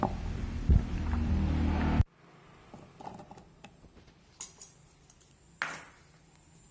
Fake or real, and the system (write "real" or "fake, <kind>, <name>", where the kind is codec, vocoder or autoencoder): real